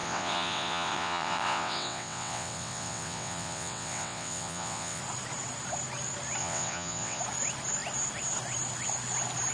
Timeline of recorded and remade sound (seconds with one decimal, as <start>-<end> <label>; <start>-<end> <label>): 0.0-5.0 remade; 5.0-6.4 recorded; 6.4-7.2 remade; 7.2-9.5 recorded